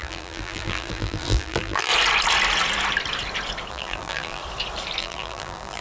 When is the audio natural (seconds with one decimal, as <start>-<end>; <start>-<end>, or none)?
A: 1.9-3.7; 4.4-5.0